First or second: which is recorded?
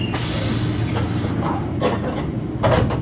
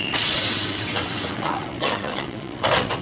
first